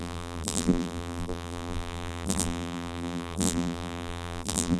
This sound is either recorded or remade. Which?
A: remade